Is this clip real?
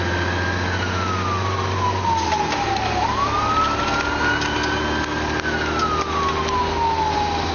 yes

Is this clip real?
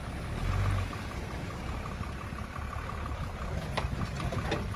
yes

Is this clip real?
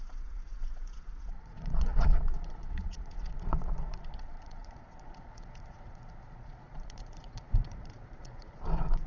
no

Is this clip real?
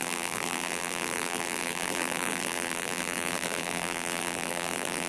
no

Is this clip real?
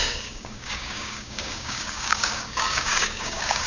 no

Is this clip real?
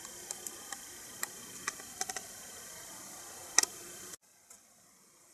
yes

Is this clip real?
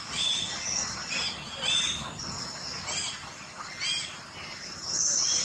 yes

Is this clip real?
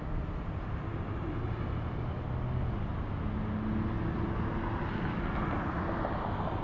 yes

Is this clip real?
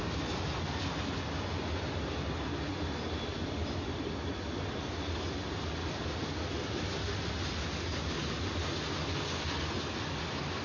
yes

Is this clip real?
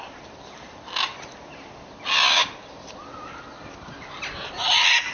yes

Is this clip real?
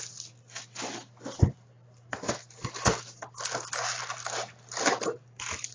yes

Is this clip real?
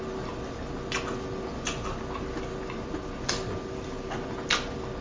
yes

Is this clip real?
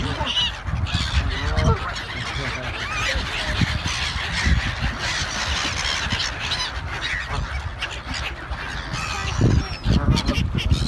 yes